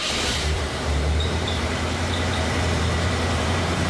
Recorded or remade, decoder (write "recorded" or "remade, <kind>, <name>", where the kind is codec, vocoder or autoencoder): remade, vocoder, BigVGAN v2